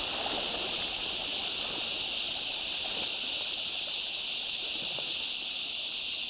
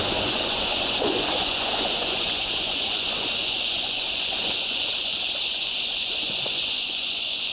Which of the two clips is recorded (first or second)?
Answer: first